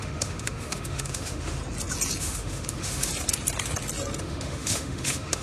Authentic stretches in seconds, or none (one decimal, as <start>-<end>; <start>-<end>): 1.6-2.2; 3.1-4.2